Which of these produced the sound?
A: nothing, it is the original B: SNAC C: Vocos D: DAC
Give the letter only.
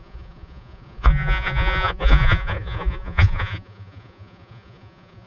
C